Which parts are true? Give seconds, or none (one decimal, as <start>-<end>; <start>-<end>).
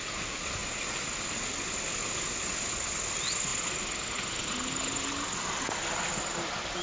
0.0-6.8